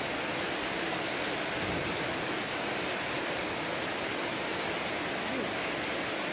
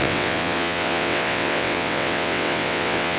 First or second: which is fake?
second